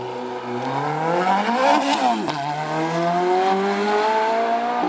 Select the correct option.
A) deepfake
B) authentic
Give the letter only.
B